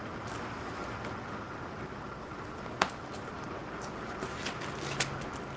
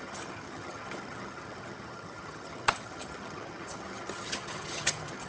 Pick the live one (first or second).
first